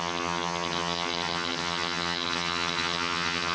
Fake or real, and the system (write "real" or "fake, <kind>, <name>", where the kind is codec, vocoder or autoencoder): fake, vocoder, HiFi-GAN